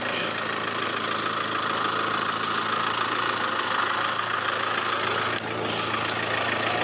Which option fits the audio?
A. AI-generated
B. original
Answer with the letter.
B